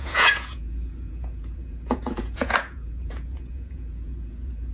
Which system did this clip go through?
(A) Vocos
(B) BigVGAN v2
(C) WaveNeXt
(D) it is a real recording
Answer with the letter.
A